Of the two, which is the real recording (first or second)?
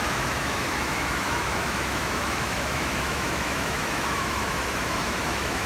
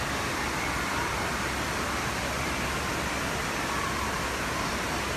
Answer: second